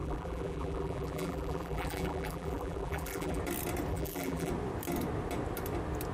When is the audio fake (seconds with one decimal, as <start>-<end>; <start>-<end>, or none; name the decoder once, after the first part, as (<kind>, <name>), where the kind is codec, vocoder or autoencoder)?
0.0-3.4 (vocoder, BigVGAN v2); 3.9-4.5